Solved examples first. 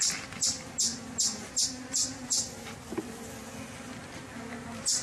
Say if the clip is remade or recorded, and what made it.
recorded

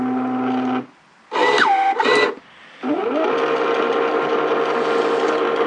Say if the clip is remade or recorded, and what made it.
recorded